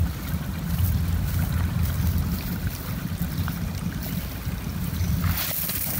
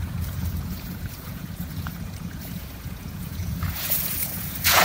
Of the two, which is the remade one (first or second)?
second